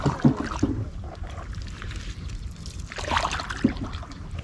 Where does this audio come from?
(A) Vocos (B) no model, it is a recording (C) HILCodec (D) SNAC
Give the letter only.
B